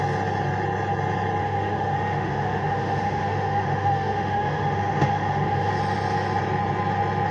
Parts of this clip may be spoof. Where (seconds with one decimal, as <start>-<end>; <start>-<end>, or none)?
1.4-5.7